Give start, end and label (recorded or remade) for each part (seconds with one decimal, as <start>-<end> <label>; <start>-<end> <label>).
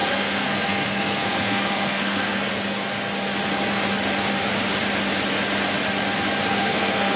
0.0-2.5 remade; 2.5-6.5 recorded; 6.5-7.2 remade